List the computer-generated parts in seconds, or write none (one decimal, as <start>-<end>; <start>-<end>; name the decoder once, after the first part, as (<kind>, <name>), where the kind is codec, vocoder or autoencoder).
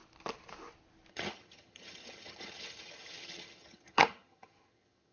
1.1-5.1 (vocoder, HiFi-GAN)